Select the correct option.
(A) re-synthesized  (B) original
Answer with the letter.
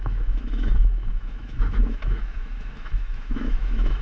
A